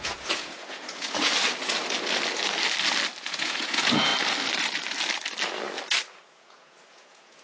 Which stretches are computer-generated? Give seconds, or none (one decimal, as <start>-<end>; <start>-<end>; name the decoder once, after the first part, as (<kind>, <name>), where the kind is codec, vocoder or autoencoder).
0.0-1.3 (vocoder, Vocos); 3.2-4.1; 6.3-7.4